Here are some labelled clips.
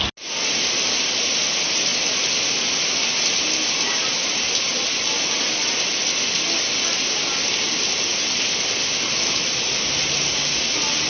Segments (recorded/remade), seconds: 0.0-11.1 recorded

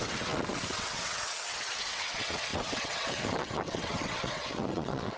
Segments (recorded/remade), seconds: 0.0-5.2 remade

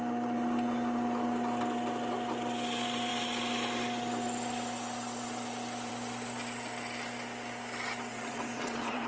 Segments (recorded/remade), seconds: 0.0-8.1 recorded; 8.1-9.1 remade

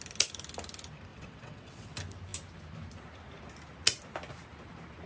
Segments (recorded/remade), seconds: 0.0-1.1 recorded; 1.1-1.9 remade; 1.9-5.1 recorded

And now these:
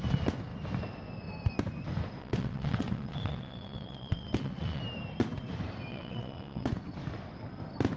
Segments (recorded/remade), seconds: 0.0-2.2 recorded; 2.2-4.8 remade; 4.8-5.9 recorded; 5.9-6.7 remade; 6.7-8.0 recorded